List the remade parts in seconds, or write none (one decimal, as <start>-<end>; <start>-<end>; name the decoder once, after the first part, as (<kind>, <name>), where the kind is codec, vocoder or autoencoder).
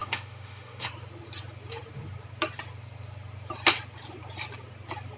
0.0-0.9 (autoencoder, DAC-VAE)